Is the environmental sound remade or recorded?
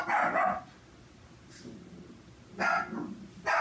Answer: recorded